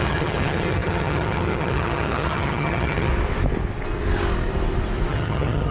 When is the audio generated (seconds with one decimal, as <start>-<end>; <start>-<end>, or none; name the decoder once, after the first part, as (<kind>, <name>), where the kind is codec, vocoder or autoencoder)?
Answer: 0.0-3.1 (vocoder, HiFi-GAN); 5.1-5.7